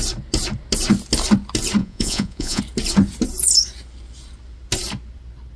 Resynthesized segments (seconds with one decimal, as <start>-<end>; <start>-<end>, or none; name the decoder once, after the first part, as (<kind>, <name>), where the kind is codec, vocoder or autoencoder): 1.8-2.6 (vocoder, Vocos)